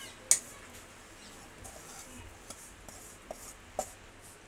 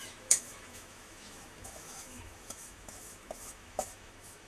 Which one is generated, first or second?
second